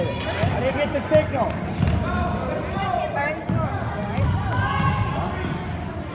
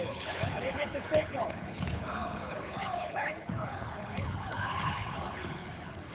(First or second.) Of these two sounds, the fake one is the second